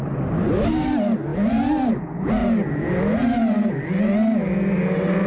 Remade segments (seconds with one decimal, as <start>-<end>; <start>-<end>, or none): none

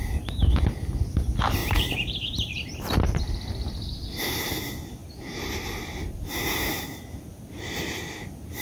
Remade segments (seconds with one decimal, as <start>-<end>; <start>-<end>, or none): 0.0-0.6; 1.6-3.2; 5.0-6.8

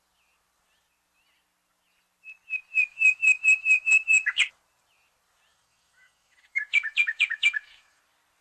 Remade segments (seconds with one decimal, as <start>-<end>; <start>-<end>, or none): 2.9-4.4; 5.5-8.0

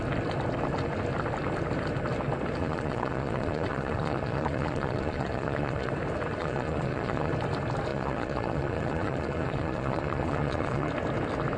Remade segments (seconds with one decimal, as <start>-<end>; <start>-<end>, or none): 2.6-5.9; 6.4-7.3; 7.9-10.9